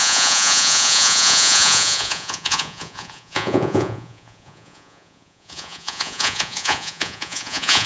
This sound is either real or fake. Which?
fake